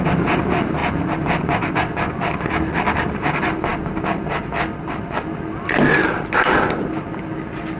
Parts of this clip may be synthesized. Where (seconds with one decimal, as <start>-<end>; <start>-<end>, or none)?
none